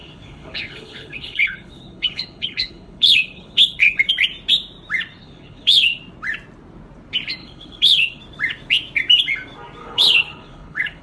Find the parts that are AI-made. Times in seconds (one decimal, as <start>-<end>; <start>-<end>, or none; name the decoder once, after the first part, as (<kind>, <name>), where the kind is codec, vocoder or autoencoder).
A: 0.0-4.1 (codec, HILCodec); 5.2-6.0; 7.4-8.2; 9.8-11.0